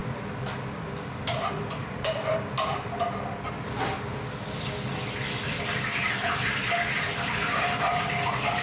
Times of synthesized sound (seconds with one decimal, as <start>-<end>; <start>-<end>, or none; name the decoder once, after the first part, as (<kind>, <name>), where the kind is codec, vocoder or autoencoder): 0.0-3.0 (vocoder, BigVGAN v2)